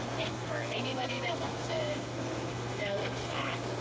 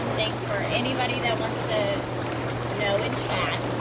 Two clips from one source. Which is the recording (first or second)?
second